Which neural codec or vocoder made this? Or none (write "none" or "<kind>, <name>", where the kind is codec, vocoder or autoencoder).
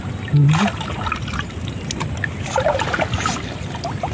none